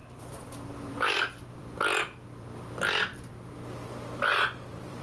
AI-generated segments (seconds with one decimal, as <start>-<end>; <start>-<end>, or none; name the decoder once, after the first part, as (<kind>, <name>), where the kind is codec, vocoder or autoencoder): 0.0-3.1 (vocoder, BigVGAN v2); 4.2-5.0